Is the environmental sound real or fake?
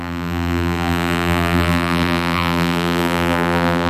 fake